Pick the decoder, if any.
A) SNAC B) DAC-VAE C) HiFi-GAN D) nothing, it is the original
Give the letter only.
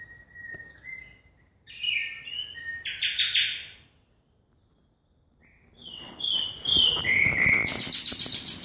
D